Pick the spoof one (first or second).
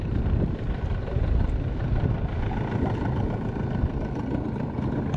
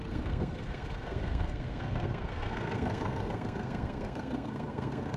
second